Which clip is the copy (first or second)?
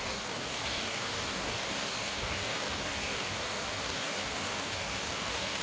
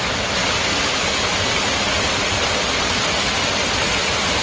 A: first